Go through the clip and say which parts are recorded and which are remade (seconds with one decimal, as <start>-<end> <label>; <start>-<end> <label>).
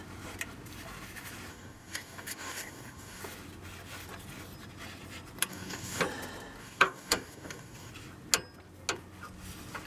0.0-1.5 recorded; 1.5-3.2 remade; 3.2-5.5 recorded; 5.5-6.0 remade; 6.0-6.6 recorded; 6.6-7.9 remade; 7.9-9.9 recorded